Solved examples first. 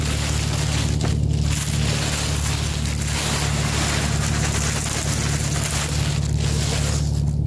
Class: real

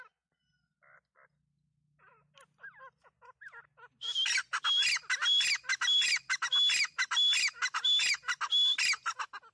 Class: real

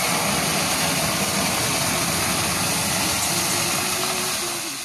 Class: real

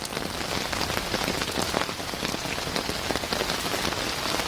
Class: real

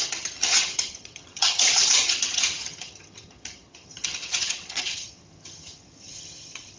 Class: fake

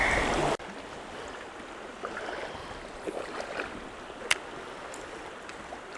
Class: real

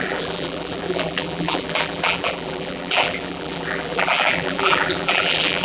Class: fake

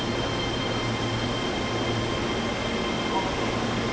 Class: real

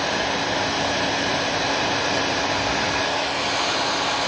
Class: real